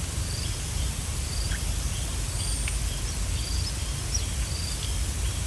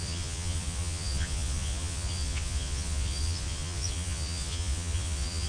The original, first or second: first